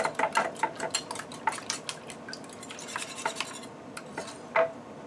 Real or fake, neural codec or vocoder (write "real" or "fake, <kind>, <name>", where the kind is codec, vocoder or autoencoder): real